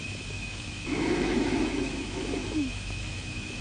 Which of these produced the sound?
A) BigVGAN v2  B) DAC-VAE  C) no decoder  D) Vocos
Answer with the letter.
B